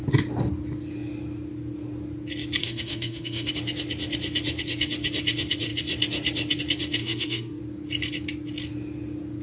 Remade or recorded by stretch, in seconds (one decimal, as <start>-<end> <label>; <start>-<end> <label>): 0.0-2.6 recorded; 2.6-3.5 remade; 3.5-7.0 recorded; 7.0-7.6 remade; 7.6-9.4 recorded